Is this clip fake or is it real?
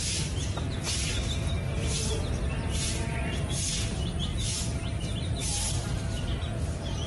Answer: real